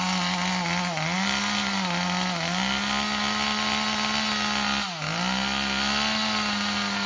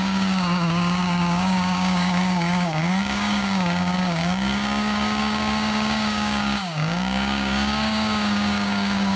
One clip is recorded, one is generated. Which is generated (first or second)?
second